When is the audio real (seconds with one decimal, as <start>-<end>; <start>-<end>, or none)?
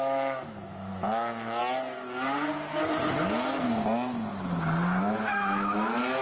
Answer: 1.6-5.0